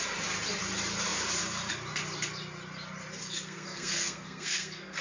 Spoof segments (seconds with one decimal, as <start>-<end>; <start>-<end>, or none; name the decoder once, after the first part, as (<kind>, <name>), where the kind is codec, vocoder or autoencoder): 3.2-5.0 (codec, SNAC)